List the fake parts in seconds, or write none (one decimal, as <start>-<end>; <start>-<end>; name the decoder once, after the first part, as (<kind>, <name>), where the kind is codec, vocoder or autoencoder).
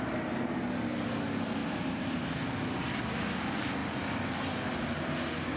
none